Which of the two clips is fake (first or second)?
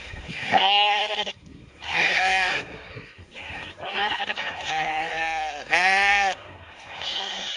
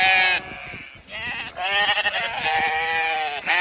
first